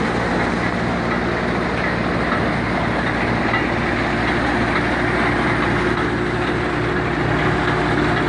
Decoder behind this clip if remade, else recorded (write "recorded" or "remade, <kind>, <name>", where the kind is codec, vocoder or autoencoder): recorded